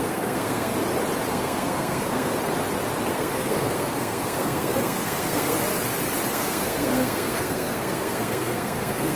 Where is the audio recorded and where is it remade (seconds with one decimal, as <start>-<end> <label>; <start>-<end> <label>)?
0.0-0.7 remade; 0.7-1.3 recorded; 1.3-2.3 remade; 2.3-3.1 recorded; 3.1-5.7 remade; 5.7-6.3 recorded; 6.3-9.2 remade